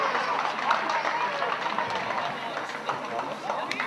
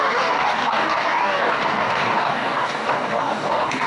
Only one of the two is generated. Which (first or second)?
second